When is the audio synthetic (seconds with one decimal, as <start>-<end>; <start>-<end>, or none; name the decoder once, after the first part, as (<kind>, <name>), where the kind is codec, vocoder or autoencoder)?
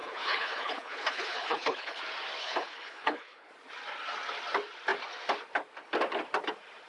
0.0-2.0 (codec, HILCodec); 2.4-3.5